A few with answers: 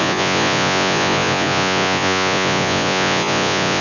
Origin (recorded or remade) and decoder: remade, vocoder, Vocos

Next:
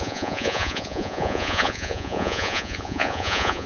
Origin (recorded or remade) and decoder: remade, vocoder, Vocos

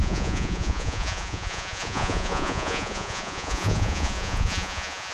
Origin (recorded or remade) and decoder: remade, vocoder, Vocos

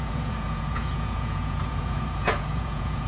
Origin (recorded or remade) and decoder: remade, vocoder, Vocos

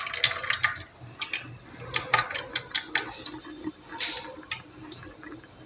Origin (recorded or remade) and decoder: recorded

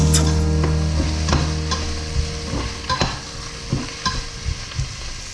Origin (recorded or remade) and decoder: recorded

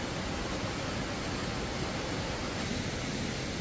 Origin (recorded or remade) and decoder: recorded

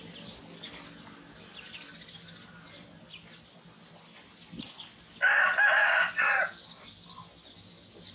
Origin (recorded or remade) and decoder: recorded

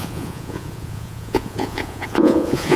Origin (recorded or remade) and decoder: remade, vocoder, Vocos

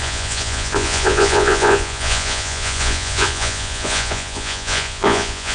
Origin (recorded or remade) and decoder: remade, vocoder, Vocos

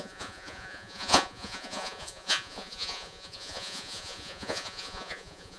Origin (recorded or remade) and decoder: remade, vocoder, Vocos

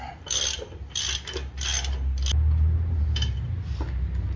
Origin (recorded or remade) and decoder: recorded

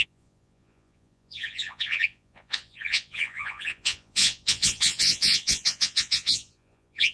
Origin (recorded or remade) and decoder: remade, vocoder, Vocos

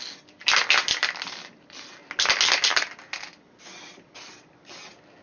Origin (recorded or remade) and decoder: recorded